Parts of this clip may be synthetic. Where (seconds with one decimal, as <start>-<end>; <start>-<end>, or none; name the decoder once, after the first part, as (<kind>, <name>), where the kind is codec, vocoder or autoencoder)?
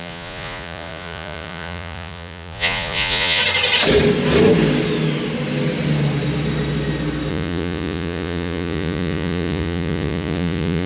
0.0-3.4 (vocoder, Vocos); 7.3-10.9